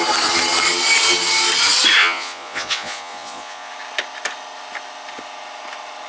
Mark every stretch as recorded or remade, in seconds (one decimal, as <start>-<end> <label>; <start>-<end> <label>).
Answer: 0.0-2.0 recorded; 2.0-3.7 remade; 3.7-6.1 recorded